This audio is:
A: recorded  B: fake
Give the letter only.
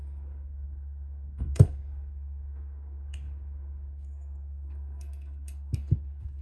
B